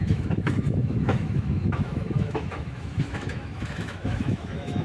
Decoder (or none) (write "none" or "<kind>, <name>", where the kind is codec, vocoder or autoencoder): autoencoder, DAC-VAE